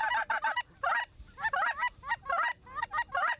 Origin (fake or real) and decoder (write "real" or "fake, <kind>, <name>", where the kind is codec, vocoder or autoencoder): real